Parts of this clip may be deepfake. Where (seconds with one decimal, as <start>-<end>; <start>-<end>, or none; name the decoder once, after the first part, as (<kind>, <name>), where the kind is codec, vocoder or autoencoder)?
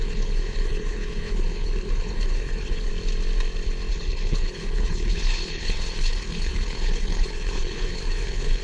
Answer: 0.0-2.9 (codec, HILCodec); 3.9-8.6